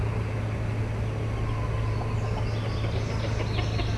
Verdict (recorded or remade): recorded